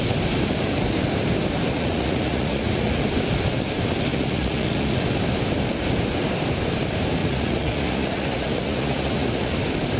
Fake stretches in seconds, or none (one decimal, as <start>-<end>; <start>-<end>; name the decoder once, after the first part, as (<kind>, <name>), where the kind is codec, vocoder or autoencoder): 1.7-3.0 (vocoder, Vocos); 4.1-5.0; 7.2-9.6

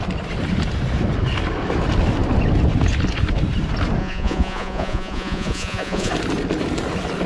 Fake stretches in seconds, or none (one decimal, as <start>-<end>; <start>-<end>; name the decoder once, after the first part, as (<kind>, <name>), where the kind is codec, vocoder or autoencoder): 4.0-6.1 (vocoder, Vocos)

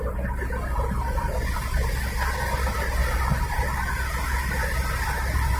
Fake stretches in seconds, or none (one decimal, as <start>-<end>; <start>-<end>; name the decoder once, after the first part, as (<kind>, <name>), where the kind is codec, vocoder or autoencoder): none

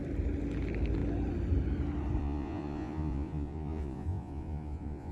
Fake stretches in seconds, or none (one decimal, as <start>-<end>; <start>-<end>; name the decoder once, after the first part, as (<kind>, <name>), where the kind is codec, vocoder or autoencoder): 2.2-5.1 (vocoder, Vocos)

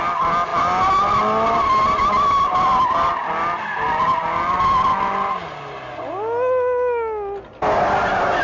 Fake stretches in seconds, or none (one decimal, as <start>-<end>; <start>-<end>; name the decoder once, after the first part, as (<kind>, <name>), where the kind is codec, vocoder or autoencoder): none

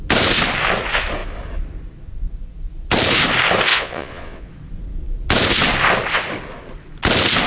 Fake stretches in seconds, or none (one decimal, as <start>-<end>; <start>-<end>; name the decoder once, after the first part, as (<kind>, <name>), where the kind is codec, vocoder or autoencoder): 3.7-4.5 (vocoder, Vocos)